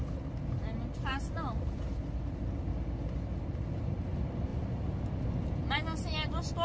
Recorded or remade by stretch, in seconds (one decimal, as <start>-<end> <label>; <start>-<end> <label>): 0.0-6.6 recorded